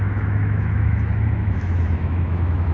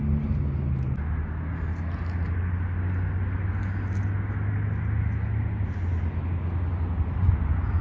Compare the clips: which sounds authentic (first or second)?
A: second